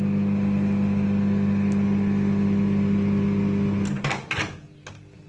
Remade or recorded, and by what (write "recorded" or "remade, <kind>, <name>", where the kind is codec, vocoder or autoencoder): recorded